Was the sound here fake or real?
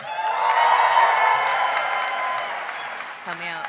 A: real